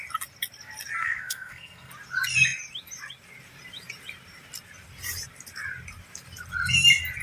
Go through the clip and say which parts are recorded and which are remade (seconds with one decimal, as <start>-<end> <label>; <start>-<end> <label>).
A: 0.0-1.0 recorded; 1.0-1.9 remade; 1.9-7.2 recorded